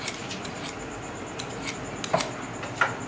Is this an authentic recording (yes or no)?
yes